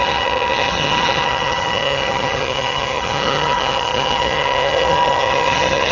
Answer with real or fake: fake